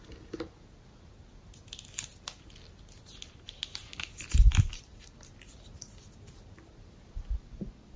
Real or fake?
real